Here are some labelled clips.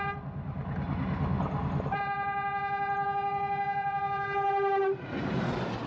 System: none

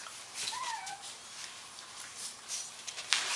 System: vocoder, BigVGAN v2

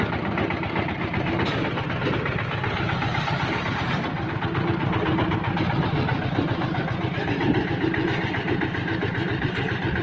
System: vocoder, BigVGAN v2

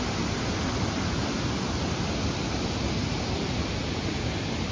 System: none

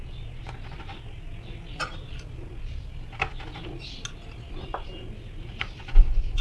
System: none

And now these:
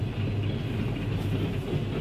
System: none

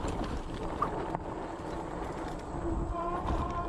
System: none